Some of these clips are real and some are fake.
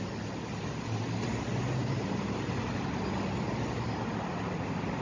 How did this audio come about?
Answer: real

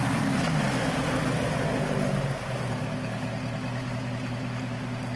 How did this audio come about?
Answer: real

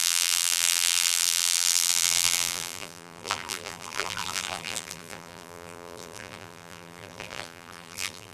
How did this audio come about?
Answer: fake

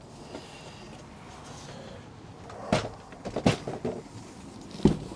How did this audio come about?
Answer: real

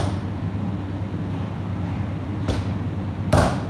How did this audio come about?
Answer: real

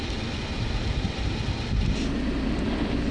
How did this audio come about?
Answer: fake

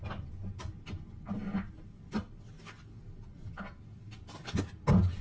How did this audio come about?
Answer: real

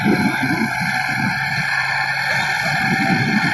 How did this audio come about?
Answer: real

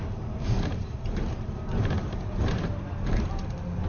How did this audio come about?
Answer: fake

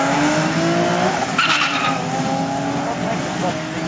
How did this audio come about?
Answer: real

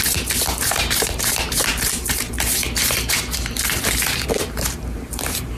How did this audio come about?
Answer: fake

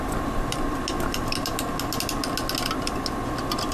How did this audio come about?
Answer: real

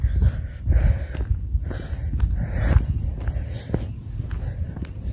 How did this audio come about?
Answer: real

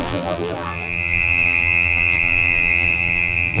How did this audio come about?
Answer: fake